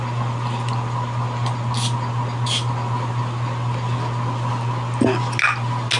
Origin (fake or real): real